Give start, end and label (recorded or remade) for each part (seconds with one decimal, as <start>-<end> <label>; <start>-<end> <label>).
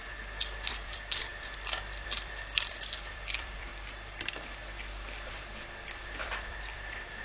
0.0-0.7 recorded; 0.7-3.7 remade; 3.7-5.3 recorded; 5.3-7.2 remade